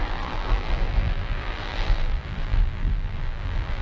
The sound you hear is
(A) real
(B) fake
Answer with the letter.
B